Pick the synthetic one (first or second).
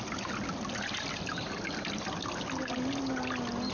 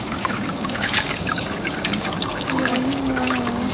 second